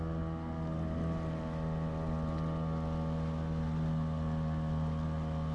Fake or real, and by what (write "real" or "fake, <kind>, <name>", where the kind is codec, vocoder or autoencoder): real